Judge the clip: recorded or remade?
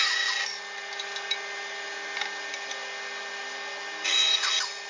recorded